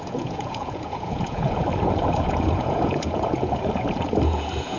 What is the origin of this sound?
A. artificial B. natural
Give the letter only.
A